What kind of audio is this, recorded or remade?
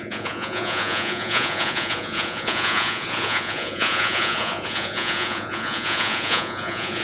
remade